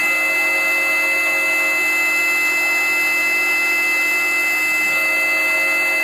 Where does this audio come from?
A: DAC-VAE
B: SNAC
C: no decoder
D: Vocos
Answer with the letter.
C